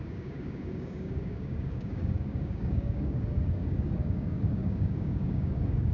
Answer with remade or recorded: remade